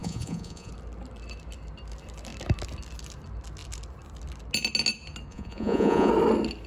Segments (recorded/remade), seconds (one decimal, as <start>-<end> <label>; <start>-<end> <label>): 0.0-0.7 remade; 0.7-5.3 recorded; 5.3-6.1 remade; 6.1-6.7 recorded